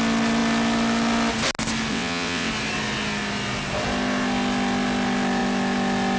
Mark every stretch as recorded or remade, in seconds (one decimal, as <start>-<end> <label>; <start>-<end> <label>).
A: 0.0-1.9 recorded; 1.9-2.5 remade; 2.5-6.2 recorded